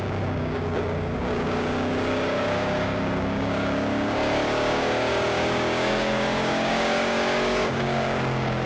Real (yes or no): no